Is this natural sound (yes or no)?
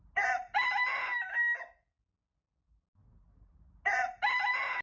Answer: yes